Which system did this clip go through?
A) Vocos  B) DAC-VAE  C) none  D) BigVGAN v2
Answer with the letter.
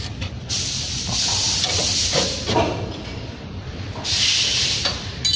D